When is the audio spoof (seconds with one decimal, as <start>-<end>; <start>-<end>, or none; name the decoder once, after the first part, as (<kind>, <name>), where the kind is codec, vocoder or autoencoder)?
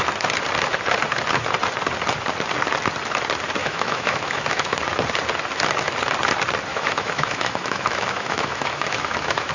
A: 3.6-4.9 (autoencoder, DAC-VAE); 6.7-9.5